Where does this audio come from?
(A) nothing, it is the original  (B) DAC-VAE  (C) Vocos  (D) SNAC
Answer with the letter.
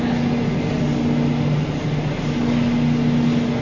A